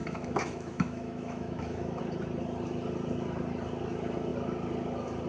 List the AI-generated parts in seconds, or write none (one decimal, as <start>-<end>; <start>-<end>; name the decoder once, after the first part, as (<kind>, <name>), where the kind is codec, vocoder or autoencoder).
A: 0.0-2.0 (autoencoder, DAC-VAE)